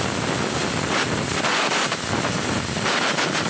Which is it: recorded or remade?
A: recorded